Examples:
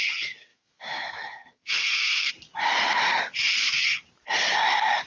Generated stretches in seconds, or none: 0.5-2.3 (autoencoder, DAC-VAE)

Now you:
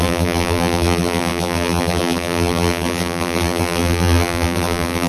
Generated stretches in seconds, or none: 0.0-5.1 (vocoder, BigVGAN v2)

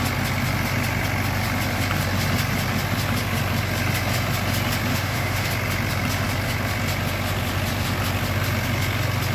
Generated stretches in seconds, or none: 4.9-5.5 (autoencoder, DAC-VAE)

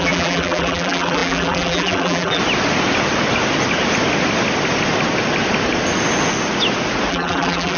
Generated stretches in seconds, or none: 0.0-2.4 (vocoder, BigVGAN v2); 7.1-7.8

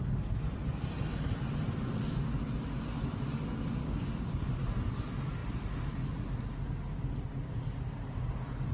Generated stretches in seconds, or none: 3.8-4.5 (codec, DAC)